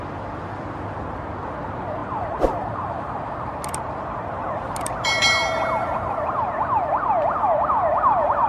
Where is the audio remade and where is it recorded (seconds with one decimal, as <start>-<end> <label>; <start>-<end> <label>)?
0.0-2.0 recorded; 2.0-3.1 remade; 3.1-5.4 recorded; 5.4-6.1 remade; 6.1-8.5 recorded